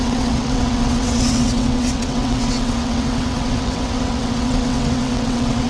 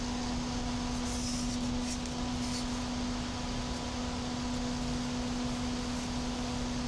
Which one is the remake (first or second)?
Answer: first